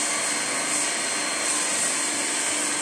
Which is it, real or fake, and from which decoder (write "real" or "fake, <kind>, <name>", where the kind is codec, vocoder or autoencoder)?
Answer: real